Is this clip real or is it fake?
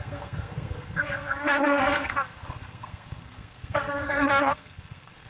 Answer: fake